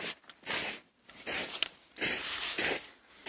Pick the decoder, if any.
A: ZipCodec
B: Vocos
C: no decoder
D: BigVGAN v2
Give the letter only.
D